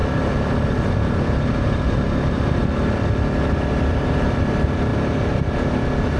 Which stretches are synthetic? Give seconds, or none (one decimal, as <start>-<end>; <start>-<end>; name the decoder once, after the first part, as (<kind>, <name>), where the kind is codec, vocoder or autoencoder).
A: 0.0-4.9 (vocoder, BigVGAN v2)